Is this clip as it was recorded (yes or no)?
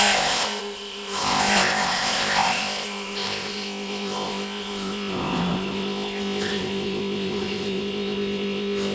no